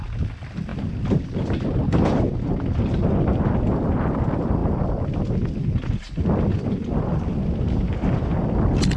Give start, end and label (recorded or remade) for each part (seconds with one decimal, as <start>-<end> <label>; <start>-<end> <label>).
0.0-9.0 recorded